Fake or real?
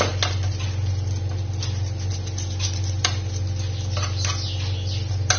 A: real